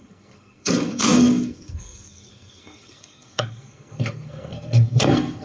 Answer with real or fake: fake